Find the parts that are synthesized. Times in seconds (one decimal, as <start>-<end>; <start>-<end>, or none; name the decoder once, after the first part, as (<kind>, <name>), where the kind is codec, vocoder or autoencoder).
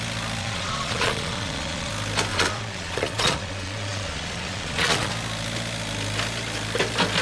0.4-1.9 (vocoder, Vocos); 2.3-5.1